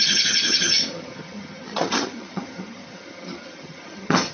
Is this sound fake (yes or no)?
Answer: yes